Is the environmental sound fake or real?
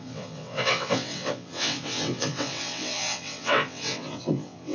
fake